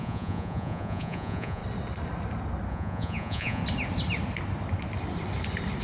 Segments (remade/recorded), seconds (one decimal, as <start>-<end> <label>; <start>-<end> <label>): 0.0-1.6 remade; 1.6-2.7 recorded; 2.7-3.6 remade; 3.6-5.8 recorded